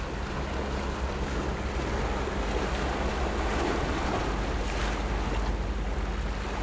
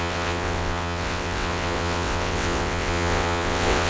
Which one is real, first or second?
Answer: first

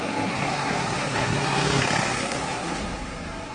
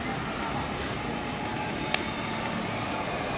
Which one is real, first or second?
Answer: second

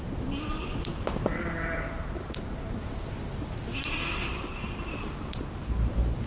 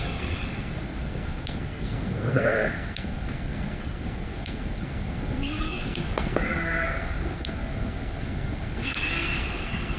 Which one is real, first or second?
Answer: first